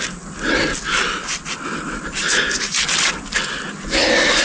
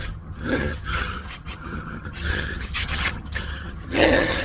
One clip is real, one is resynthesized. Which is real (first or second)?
first